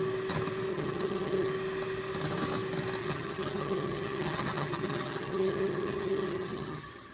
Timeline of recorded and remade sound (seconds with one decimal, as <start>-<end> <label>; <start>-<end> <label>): 0.0-0.7 recorded; 0.7-1.5 remade; 1.5-3.0 recorded; 3.0-7.1 remade